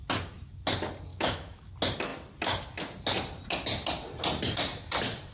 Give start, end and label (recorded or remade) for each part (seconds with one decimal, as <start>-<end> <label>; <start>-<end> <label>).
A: 0.0-1.1 recorded; 1.1-1.7 remade; 1.7-5.3 recorded